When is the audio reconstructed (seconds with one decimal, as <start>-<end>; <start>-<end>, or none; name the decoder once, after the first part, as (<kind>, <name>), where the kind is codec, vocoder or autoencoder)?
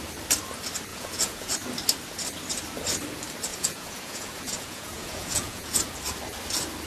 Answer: 0.9-1.5 (vocoder, Vocos); 3.5-5.8